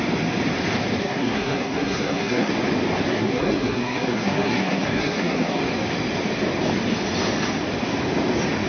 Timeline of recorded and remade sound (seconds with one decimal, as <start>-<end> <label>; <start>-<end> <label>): 0.0-1.0 recorded; 1.0-2.5 remade; 2.5-3.1 recorded; 3.1-5.6 remade; 5.6-8.7 recorded